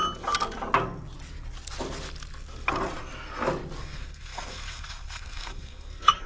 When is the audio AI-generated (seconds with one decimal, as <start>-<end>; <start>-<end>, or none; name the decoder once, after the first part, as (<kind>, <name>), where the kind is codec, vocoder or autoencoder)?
3.8-6.3 (codec, SNAC)